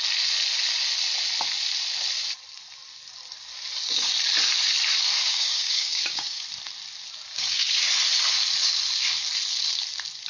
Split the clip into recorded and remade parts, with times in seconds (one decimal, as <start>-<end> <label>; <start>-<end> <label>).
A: 0.0-5.2 recorded; 5.2-6.4 remade; 6.4-7.3 recorded; 7.3-7.9 remade; 7.9-10.3 recorded